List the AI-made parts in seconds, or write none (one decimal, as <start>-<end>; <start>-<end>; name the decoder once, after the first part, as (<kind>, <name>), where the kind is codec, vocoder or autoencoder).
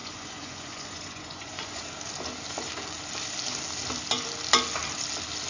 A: 0.0-1.8 (vocoder, Vocos)